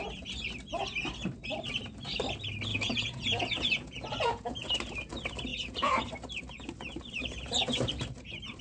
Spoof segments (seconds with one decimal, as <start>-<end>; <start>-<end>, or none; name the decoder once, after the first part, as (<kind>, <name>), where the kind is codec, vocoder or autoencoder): 2.7-4.7 (vocoder, Vocos); 5.5-6.0